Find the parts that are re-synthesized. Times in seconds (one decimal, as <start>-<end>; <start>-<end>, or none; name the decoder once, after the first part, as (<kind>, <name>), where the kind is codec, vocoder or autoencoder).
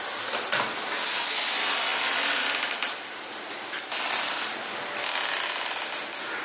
none